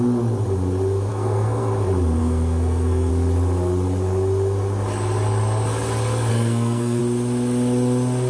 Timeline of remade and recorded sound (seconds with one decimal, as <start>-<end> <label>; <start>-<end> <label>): 0.0-1.1 recorded; 1.1-1.7 remade; 1.7-2.2 recorded; 2.2-3.1 remade; 3.1-6.3 recorded; 6.3-7.0 remade; 7.0-8.3 recorded